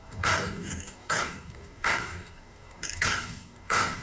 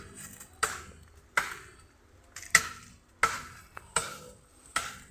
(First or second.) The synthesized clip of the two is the first